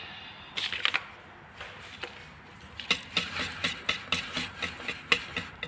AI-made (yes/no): no